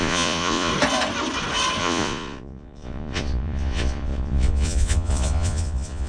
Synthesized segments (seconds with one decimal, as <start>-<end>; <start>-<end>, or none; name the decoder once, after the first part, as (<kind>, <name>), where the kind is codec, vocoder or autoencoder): 0.0-0.7 (vocoder, Vocos); 1.8-6.1